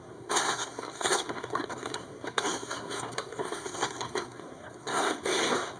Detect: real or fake fake